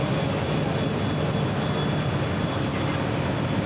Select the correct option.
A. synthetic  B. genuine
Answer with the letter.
B